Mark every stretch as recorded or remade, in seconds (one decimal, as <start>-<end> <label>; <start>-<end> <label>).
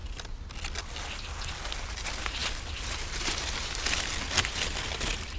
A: 0.0-5.4 recorded